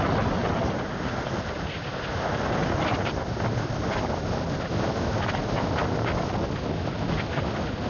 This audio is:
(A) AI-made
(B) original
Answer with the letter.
B